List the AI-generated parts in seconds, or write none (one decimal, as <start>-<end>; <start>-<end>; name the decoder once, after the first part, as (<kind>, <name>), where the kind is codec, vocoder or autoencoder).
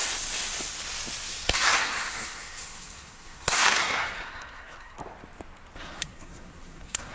1.3-5.0 (codec, SNAC); 5.8-7.1